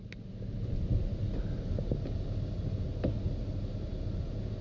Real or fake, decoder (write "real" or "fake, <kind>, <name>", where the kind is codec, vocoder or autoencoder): real